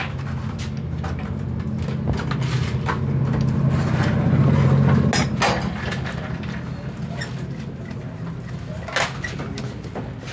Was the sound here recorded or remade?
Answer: recorded